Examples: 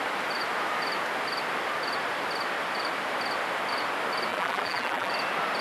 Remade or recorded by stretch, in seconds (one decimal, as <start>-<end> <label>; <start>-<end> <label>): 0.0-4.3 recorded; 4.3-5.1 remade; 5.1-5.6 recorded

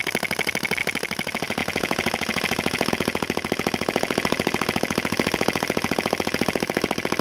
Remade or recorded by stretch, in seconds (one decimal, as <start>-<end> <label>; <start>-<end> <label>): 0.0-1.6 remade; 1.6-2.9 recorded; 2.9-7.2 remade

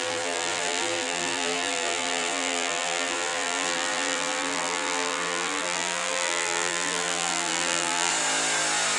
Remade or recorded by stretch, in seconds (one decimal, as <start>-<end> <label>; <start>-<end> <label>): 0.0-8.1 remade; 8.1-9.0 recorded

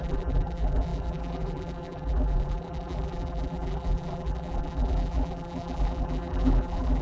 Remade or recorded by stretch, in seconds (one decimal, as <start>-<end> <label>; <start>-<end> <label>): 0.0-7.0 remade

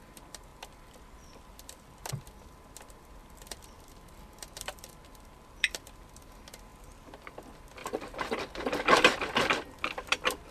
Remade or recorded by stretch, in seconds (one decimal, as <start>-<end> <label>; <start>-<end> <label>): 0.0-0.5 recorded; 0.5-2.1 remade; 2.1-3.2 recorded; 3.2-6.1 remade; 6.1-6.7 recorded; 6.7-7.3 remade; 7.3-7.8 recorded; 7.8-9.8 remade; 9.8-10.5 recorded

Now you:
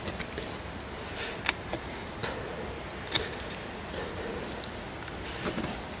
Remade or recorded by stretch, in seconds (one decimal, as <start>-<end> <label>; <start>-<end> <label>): 0.0-6.0 recorded

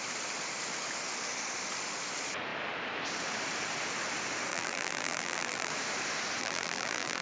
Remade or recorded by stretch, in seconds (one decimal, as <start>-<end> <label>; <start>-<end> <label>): 0.0-4.5 recorded; 4.5-5.7 remade; 5.7-6.4 recorded; 6.4-7.2 remade

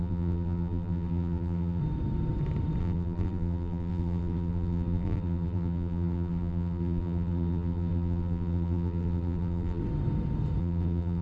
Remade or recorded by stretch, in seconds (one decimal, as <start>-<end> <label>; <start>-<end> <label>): 0.0-1.8 remade; 1.8-2.8 recorded; 2.8-9.8 remade; 9.8-10.6 recorded; 10.6-11.2 remade